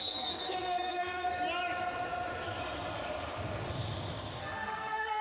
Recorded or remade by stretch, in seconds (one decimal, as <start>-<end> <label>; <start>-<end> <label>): 0.0-1.3 remade; 1.3-4.4 recorded; 4.4-5.2 remade